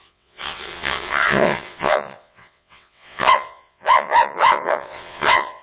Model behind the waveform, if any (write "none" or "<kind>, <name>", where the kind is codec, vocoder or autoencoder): vocoder, WaveNeXt